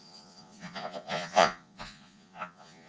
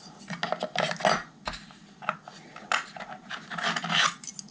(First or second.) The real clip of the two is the second